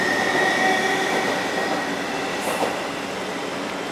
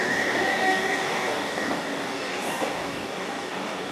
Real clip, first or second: first